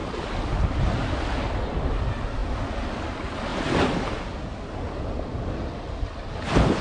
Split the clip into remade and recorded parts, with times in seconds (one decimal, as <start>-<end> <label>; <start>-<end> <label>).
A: 0.0-6.8 recorded